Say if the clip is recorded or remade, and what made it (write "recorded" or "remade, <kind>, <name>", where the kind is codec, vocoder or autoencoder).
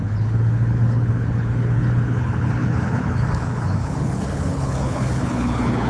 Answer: remade, codec, HILCodec